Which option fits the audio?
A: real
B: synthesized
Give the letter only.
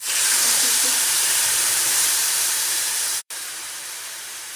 B